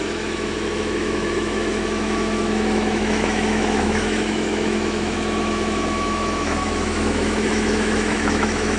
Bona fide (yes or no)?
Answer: no